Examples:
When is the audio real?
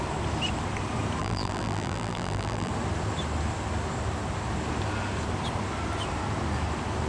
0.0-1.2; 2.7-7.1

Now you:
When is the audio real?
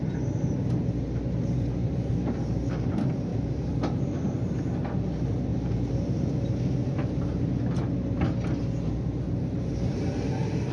0.0-1.8; 2.9-3.3; 4.1-5.5; 7.5-10.7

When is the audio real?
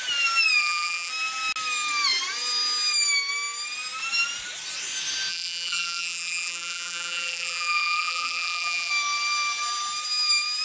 0.0-0.6; 1.1-5.3; 8.9-10.6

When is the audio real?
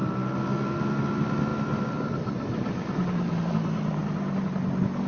0.0-5.1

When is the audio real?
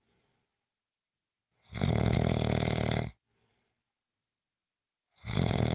1.4-3.9